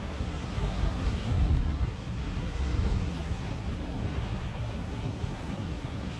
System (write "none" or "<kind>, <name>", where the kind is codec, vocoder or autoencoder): codec, SNAC